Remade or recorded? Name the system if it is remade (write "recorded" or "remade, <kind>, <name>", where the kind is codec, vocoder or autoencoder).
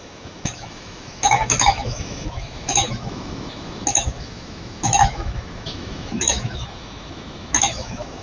remade, autoencoder, DAC-VAE